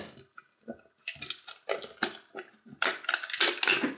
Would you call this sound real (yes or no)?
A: yes